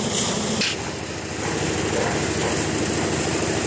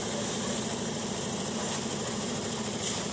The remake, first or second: second